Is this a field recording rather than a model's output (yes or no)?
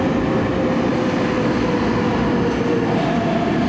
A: yes